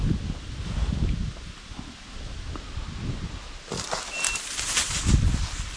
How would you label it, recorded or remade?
recorded